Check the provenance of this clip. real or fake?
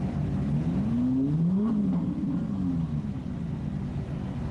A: real